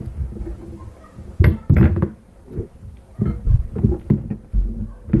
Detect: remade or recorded recorded